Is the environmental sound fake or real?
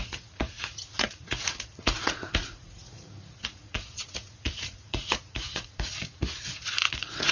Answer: fake